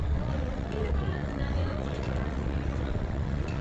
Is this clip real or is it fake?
fake